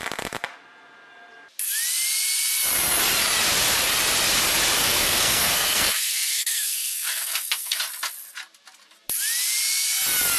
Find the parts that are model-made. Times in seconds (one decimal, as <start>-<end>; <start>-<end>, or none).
4.8-7.8